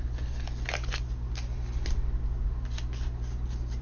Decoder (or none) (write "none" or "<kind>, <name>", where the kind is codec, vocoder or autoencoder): none